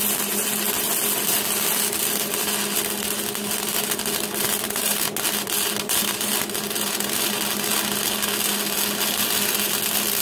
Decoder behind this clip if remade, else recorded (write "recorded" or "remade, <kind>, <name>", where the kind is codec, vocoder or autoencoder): recorded